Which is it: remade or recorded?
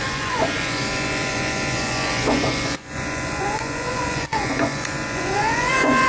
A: remade